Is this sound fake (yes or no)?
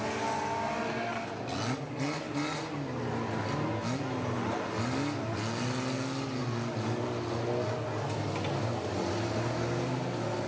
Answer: no